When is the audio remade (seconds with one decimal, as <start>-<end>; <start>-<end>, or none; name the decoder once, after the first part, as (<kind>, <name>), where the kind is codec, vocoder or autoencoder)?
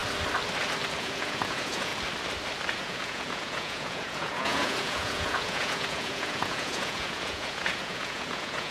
1.0-1.9 (vocoder, Vocos); 2.7-8.7